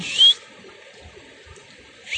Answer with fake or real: real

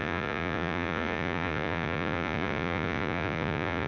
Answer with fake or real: fake